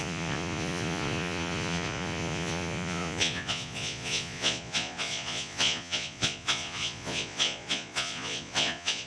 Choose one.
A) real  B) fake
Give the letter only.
B